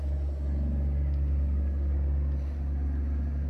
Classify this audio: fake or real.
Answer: real